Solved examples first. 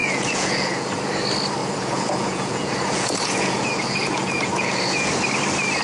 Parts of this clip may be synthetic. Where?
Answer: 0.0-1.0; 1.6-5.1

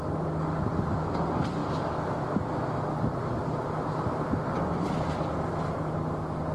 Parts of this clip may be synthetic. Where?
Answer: none

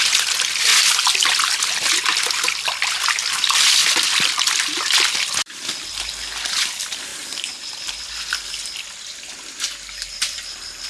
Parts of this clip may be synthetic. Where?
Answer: none

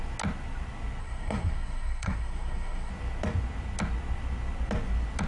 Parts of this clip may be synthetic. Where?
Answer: 1.0-2.9

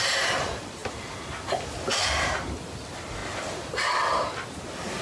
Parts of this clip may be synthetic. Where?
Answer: none